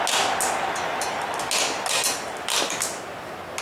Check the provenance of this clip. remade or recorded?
recorded